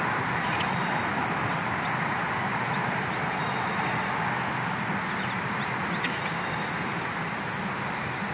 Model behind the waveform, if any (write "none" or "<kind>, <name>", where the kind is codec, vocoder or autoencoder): none